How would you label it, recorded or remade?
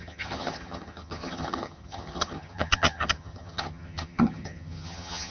remade